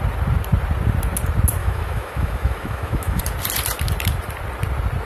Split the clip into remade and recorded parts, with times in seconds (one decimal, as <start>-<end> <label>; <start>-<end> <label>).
0.0-1.6 recorded; 1.6-3.2 remade; 3.2-5.1 recorded